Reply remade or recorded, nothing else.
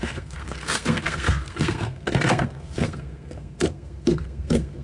remade